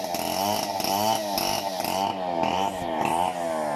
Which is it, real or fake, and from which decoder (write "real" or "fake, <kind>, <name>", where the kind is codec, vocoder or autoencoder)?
real